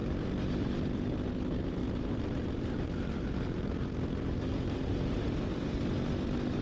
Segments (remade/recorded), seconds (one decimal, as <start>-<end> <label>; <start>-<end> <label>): 0.0-1.8 recorded; 1.8-5.8 remade; 5.8-6.6 recorded